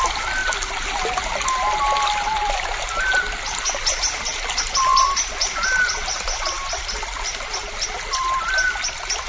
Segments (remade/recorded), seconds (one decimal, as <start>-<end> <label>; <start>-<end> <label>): 0.0-0.4 remade; 0.4-4.6 recorded; 4.6-9.3 remade